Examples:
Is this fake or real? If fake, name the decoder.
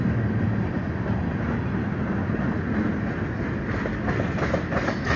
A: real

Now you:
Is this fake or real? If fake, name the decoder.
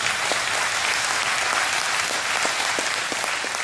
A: real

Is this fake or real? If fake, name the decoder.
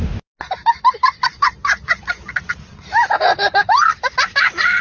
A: real